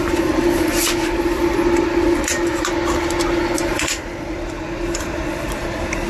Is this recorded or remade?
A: recorded